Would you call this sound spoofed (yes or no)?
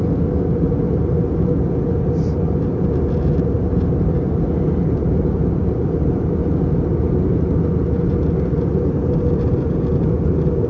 no